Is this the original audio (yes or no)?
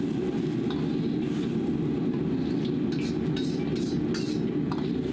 yes